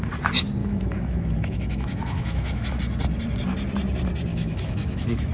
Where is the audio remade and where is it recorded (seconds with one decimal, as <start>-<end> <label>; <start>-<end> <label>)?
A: 0.0-0.6 recorded; 0.6-2.7 remade; 2.7-4.3 recorded; 4.3-5.3 remade